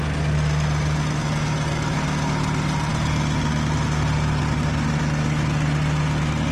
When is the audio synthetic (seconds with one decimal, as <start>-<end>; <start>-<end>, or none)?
none